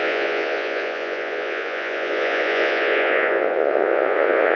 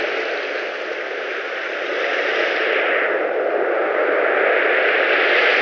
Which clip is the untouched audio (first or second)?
second